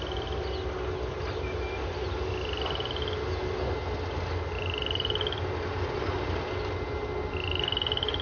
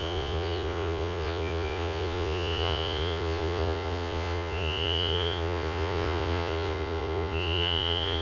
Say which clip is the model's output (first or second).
second